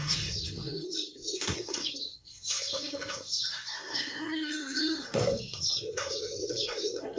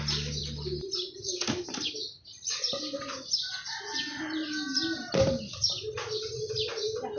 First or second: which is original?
second